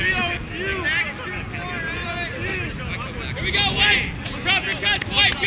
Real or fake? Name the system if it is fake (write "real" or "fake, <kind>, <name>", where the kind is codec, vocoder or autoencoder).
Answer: real